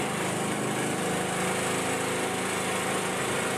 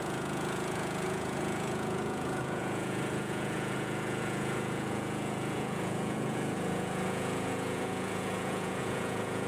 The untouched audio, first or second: first